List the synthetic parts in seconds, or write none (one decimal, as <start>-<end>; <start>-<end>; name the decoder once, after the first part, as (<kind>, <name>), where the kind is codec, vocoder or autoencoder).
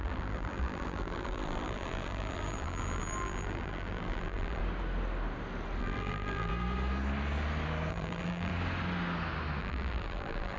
0.0-4.6 (vocoder, BigVGAN v2); 5.8-6.5; 7.9-8.5; 9.6-10.6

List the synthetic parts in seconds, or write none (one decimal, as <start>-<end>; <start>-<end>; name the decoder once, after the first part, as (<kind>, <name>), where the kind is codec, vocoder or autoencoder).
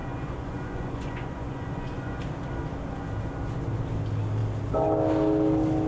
0.0-2.2 (vocoder, Vocos)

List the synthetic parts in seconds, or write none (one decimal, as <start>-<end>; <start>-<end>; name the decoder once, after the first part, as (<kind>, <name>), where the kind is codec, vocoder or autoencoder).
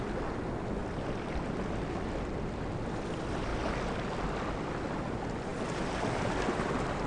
none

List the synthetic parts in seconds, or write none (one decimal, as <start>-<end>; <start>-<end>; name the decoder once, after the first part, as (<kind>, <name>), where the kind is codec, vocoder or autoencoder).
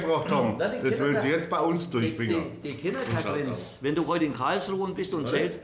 none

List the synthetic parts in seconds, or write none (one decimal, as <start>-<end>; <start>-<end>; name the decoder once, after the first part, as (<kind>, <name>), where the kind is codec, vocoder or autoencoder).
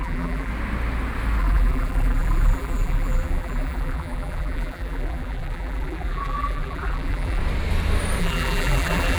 0.0-0.5 (vocoder, BigVGAN v2); 1.4-7.4; 8.2-9.2